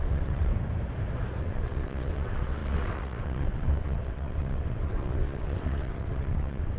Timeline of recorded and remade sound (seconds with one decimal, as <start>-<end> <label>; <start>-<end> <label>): 0.0-0.5 remade; 0.5-1.4 recorded; 1.4-6.8 remade